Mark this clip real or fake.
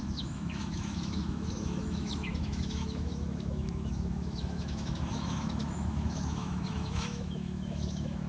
fake